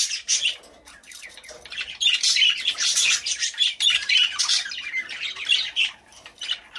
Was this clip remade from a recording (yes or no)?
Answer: yes